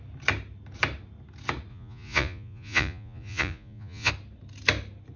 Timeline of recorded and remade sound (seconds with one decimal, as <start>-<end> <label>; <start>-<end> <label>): 0.0-1.7 recorded; 1.7-4.1 remade; 4.1-5.2 recorded